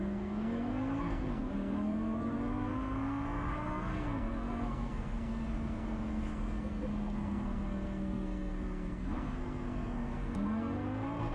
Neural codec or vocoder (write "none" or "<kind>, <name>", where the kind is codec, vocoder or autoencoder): codec, SNAC